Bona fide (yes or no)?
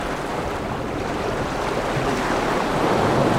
yes